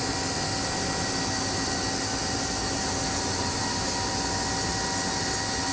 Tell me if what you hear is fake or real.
real